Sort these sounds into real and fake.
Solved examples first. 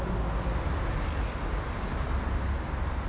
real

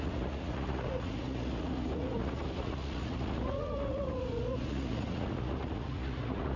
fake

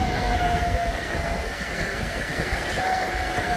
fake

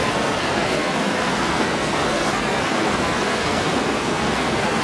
fake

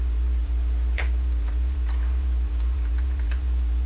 fake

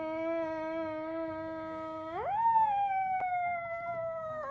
real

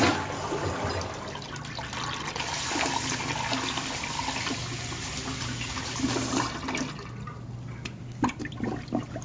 real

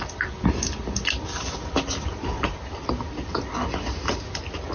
real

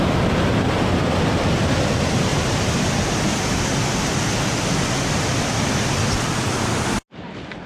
real